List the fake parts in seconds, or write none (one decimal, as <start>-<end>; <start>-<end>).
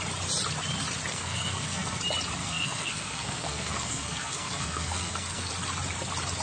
1.1-2.0; 2.4-5.5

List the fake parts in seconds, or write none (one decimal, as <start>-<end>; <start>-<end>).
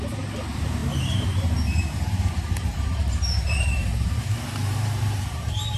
0.0-5.8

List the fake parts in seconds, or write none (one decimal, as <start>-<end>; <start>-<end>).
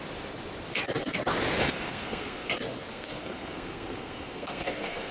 1.6-2.5; 2.9-5.1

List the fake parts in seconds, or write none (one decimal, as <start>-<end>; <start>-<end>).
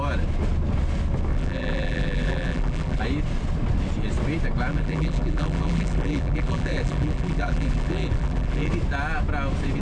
1.3-3.0; 4.7-8.7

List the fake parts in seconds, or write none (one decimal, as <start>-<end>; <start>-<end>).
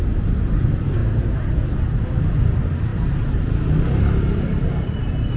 none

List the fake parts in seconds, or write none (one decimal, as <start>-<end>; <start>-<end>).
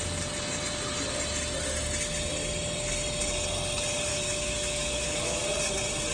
4.1-5.4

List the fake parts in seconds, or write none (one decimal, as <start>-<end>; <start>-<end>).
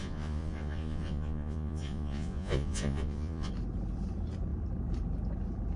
0.0-3.5